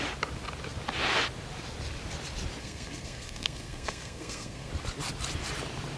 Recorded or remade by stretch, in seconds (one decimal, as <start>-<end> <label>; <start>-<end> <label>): 0.0-2.6 recorded; 2.6-4.7 remade; 4.7-6.0 recorded